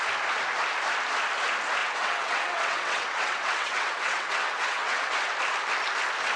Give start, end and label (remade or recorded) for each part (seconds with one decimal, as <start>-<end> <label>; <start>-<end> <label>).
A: 0.0-1.8 recorded; 1.8-5.1 remade; 5.1-6.4 recorded